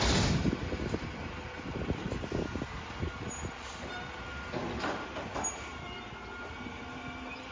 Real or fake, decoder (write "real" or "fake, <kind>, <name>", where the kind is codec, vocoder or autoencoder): real